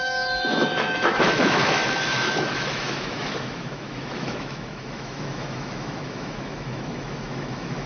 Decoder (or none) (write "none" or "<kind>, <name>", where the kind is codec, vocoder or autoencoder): autoencoder, DAC-VAE